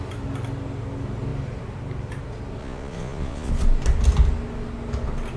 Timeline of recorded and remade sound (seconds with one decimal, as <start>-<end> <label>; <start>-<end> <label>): 0.0-2.6 recorded; 2.6-3.5 remade; 3.5-5.4 recorded

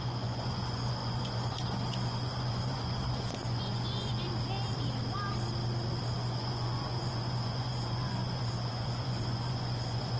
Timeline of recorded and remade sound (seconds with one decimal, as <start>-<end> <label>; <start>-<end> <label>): 0.0-4.3 remade; 4.3-6.1 recorded; 6.1-10.2 remade

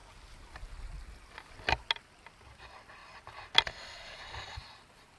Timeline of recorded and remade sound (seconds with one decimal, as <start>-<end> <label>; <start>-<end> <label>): 0.0-5.2 recorded

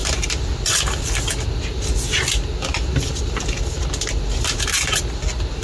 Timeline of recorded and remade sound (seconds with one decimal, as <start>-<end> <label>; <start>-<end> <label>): 0.0-5.6 recorded

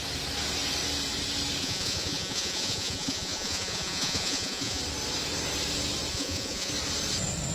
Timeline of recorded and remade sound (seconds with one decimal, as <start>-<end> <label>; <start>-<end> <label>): 0.0-1.6 recorded; 1.6-4.8 remade; 4.8-6.1 recorded; 6.1-6.7 remade; 6.7-7.5 recorded

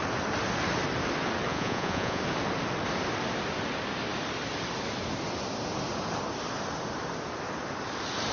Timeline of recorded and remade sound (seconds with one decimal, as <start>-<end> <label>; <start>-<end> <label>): 0.0-1.5 recorded; 1.5-2.2 remade; 2.2-8.3 recorded

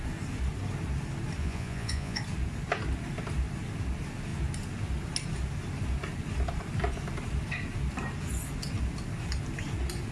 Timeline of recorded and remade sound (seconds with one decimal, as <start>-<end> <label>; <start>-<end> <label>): 0.0-1.4 recorded; 1.4-2.2 remade; 2.2-10.1 recorded

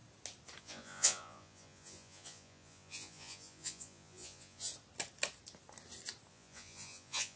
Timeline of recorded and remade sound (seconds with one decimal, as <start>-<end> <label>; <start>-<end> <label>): 0.0-0.6 recorded; 0.6-4.7 remade; 4.7-6.3 recorded; 6.3-7.4 remade